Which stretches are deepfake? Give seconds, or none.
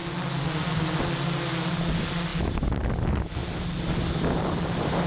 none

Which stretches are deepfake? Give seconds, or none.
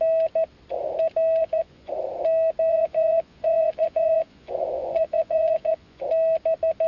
1.4-1.9 (vocoder, Vocos); 2.7-6.0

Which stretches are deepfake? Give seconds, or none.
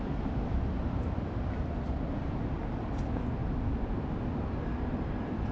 none